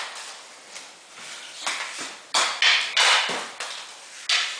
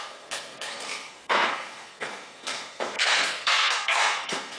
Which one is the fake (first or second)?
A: second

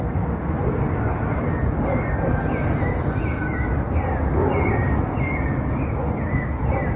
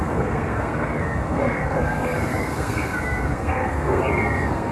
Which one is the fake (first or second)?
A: second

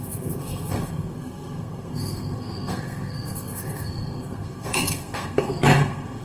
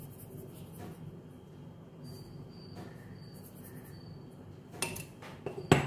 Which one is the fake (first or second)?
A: first